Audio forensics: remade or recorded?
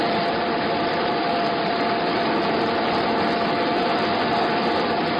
remade